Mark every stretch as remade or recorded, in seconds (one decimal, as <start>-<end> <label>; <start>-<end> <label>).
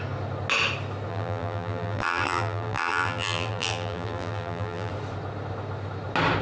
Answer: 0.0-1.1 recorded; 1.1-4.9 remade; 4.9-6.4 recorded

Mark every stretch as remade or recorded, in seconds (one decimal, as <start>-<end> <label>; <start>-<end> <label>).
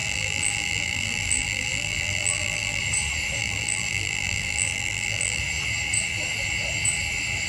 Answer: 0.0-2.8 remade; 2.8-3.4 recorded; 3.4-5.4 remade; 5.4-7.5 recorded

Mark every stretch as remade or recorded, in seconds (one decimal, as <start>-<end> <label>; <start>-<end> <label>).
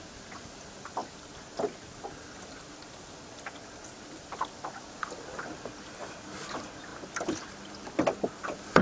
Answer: 0.0-8.8 recorded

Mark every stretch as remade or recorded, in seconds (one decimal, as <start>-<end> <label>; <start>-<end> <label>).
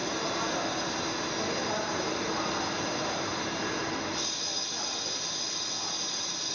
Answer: 0.0-3.9 remade; 3.9-6.5 recorded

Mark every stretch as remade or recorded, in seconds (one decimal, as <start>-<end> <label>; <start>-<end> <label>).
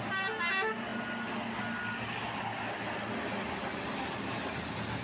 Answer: 0.0-5.0 recorded